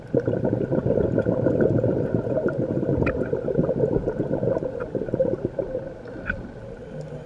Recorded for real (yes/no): yes